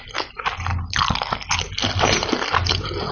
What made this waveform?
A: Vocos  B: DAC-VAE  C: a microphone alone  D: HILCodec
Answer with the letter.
C